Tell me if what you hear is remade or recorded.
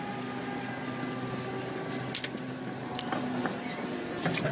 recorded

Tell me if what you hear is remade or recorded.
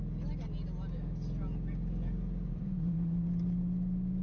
recorded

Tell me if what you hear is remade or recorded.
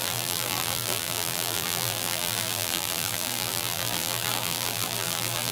remade